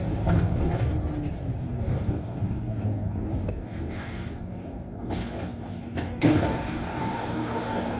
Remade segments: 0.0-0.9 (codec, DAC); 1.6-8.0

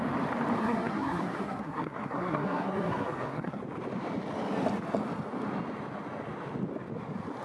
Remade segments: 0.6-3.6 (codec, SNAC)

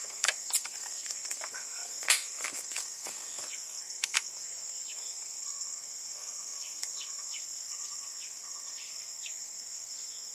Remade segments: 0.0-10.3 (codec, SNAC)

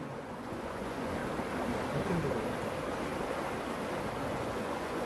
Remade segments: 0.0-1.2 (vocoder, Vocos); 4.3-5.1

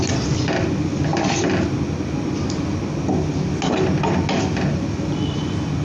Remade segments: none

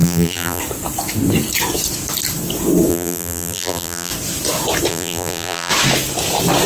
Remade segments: 0.0-0.6 (vocoder, BigVGAN v2); 2.9-4.1; 4.9-5.7

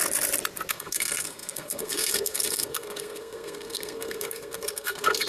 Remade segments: 0.7-5.3 (codec, SNAC)

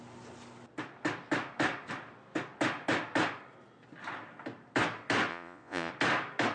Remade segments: 5.3-5.9 (vocoder, Vocos)